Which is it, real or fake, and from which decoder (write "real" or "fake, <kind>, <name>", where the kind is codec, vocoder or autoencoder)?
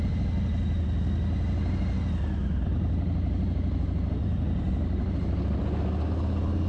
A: real